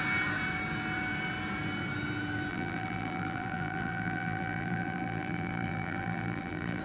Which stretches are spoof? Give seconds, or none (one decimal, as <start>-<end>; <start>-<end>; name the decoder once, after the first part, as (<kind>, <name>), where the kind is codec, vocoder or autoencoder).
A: 2.5-6.8 (vocoder, BigVGAN v2)